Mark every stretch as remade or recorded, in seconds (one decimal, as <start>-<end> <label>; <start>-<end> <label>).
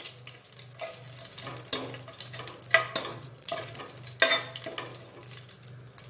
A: 0.0-3.1 recorded; 3.1-3.8 remade; 3.8-6.1 recorded